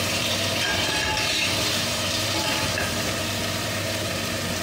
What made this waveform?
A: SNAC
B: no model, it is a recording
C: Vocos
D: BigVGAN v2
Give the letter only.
D